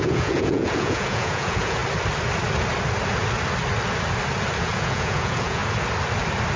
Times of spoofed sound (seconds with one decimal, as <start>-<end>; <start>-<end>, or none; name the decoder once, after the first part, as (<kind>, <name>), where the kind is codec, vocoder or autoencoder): 0.0-1.8 (vocoder, Vocos); 4.6-5.6